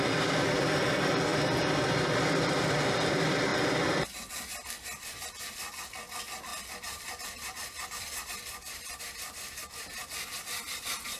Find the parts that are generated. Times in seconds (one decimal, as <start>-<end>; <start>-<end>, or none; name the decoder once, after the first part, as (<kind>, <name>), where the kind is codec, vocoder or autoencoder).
0.0-11.2 (vocoder, BigVGAN v2)